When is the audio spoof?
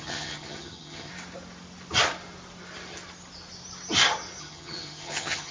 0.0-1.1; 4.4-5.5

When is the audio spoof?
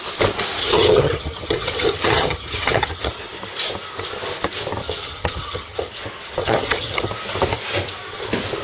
0.6-3.1; 4.8-5.9; 6.4-7.1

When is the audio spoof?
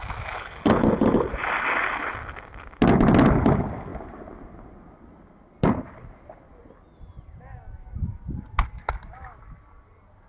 none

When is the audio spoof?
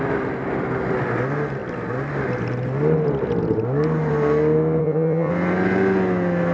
4.8-5.3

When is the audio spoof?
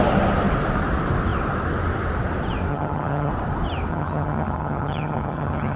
2.7-3.3; 3.9-5.8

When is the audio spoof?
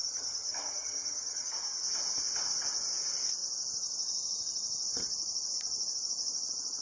0.0-1.5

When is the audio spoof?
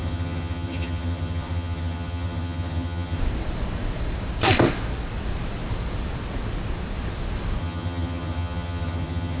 0.0-3.2; 7.6-9.4